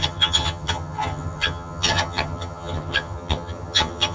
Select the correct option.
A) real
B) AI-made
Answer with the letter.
B